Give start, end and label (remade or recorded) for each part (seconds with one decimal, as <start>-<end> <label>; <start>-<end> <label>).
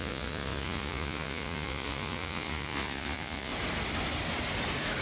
0.0-3.5 remade; 3.5-5.0 recorded